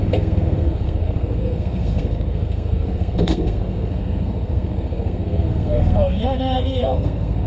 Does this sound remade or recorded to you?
remade